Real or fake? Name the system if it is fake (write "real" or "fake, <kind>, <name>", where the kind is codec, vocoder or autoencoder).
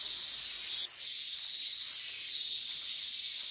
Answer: real